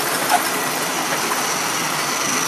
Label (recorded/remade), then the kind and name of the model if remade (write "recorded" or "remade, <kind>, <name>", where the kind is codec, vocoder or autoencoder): recorded